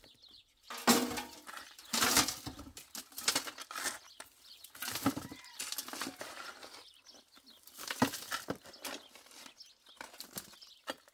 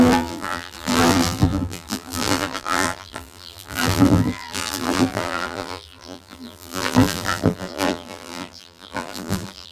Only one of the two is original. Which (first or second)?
first